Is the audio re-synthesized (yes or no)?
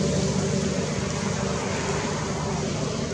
no